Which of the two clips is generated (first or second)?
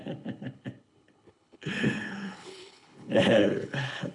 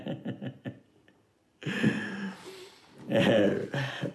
first